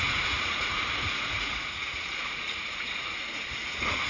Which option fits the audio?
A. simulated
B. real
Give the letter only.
A